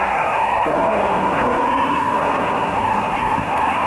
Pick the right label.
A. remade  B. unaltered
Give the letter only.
A